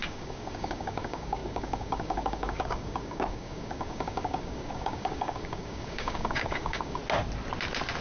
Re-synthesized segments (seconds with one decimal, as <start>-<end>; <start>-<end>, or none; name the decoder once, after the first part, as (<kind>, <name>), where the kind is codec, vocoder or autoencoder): 0.0-7.0 (codec, DAC)